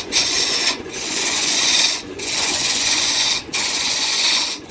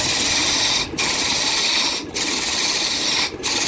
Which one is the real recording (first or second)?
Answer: second